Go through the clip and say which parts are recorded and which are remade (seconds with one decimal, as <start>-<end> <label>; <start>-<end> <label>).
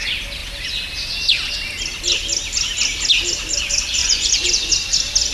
0.0-4.0 recorded; 4.0-4.7 remade; 4.7-5.3 recorded